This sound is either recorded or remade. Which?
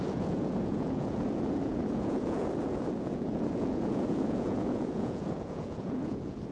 remade